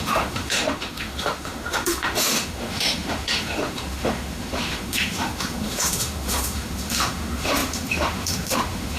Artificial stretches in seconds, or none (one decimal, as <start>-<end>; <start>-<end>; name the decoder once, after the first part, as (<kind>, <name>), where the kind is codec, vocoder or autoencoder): 0.0-9.0 (autoencoder, DAC-VAE)